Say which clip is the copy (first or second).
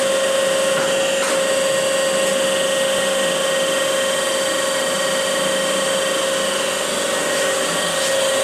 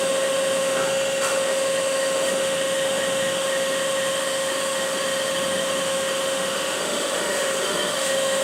second